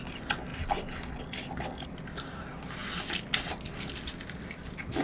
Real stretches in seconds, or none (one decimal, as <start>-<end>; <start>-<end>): 0.0-5.0